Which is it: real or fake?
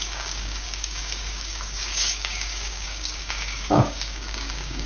fake